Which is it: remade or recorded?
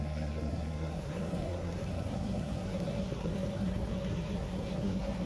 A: remade